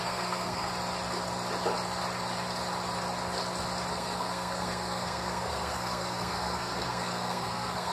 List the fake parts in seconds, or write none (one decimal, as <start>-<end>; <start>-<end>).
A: 0.0-0.7; 3.9-7.9